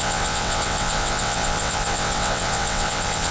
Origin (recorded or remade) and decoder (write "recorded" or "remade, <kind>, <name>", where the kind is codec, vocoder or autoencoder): remade, vocoder, WaveNeXt